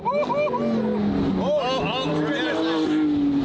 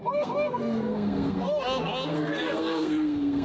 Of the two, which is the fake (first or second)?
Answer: second